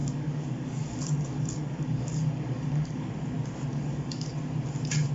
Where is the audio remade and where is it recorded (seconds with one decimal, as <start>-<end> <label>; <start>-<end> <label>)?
0.0-3.1 remade; 3.1-3.7 recorded; 3.7-4.3 remade; 4.3-5.1 recorded